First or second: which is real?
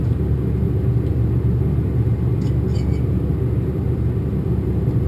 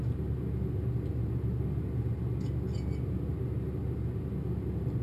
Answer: second